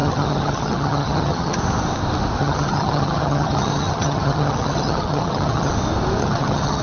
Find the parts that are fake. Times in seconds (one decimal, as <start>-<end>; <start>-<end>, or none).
0.0-1.6; 2.4-5.7; 6.2-6.8